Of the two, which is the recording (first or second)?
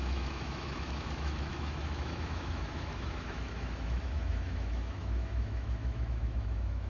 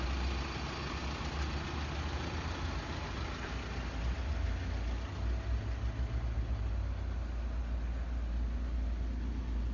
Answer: second